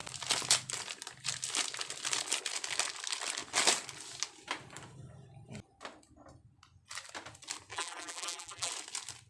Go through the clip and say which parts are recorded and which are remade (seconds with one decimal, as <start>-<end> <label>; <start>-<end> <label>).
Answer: 0.0-7.7 recorded; 7.7-8.7 remade; 8.7-9.3 recorded